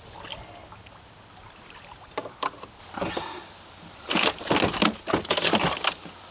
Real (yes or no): yes